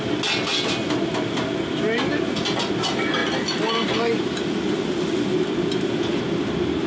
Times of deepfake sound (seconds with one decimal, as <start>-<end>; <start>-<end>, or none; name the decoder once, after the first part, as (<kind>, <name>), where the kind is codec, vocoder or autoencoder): none